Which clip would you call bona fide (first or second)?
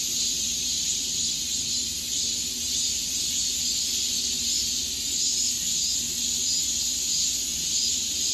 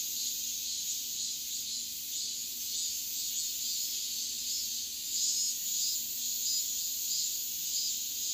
second